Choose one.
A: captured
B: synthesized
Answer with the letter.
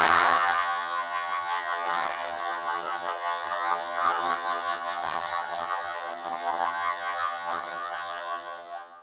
B